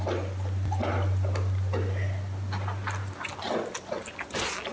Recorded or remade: recorded